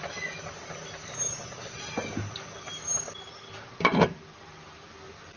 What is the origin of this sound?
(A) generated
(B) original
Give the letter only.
B